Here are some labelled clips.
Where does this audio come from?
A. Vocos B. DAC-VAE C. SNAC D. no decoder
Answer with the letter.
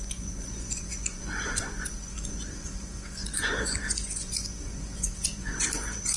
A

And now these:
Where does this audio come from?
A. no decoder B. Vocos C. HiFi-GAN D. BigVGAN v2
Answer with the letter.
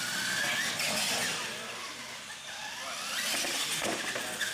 A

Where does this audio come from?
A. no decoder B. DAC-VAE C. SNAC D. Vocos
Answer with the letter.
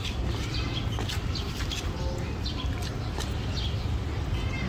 A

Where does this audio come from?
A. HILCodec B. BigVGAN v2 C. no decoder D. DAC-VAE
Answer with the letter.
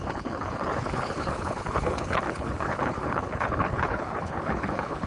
A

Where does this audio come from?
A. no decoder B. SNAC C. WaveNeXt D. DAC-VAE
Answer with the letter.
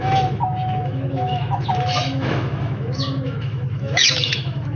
D